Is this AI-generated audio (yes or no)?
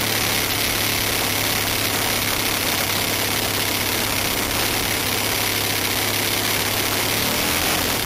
no